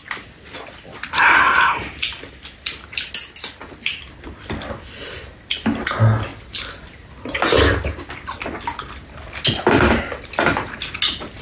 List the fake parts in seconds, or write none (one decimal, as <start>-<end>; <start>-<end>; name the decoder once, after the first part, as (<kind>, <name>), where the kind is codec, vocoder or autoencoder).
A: none

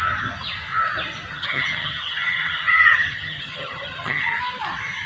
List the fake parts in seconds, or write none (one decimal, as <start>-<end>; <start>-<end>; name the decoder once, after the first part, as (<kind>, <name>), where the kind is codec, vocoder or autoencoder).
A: 1.3-4.4 (vocoder, HiFi-GAN)

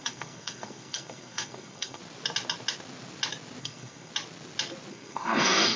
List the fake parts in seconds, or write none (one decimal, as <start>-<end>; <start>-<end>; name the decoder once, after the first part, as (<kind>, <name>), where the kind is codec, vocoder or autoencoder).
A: 0.0-2.0 (codec, SNAC); 3.6-4.1; 4.9-5.8

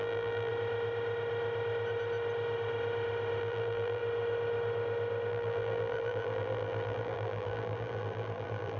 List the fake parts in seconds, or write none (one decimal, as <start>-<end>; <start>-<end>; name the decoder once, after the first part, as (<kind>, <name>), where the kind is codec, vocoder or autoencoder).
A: 0.0-0.5 (vocoder, BigVGAN v2); 3.4-4.0; 5.3-8.8